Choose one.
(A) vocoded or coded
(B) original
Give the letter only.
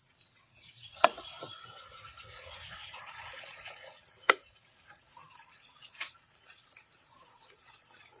A